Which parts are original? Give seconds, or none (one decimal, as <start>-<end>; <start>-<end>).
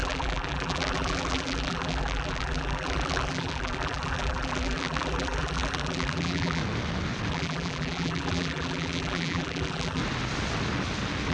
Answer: 6.6-7.3; 10.0-11.3